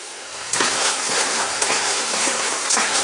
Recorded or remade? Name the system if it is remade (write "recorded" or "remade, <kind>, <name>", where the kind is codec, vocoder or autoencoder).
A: remade, codec, SNAC